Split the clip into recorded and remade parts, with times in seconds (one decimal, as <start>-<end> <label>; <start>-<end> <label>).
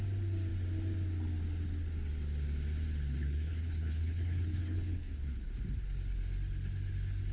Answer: 0.0-3.2 recorded; 3.2-5.5 remade; 5.5-7.3 recorded